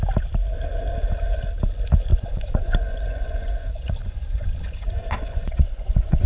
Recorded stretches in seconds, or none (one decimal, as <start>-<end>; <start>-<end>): 0.0-2.1